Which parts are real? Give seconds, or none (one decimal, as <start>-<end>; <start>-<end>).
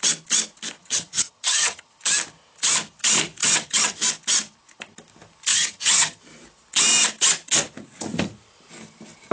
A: 0.0-0.8; 1.9-3.4; 4.0-5.5; 6.2-9.3